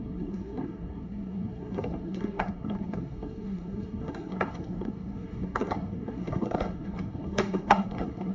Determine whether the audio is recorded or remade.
remade